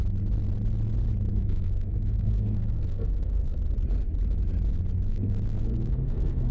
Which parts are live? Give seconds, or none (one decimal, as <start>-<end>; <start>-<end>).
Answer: 0.0-1.3; 3.6-5.1